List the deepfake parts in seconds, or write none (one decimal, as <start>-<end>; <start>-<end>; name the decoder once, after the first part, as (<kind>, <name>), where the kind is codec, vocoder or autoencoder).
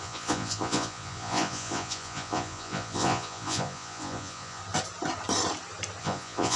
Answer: 0.0-4.6 (vocoder, Vocos); 6.0-6.6